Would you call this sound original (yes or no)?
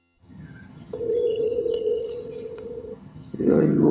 no